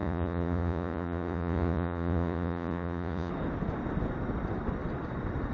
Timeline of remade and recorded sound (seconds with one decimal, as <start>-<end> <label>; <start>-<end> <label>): 0.0-3.3 remade; 3.3-5.5 recorded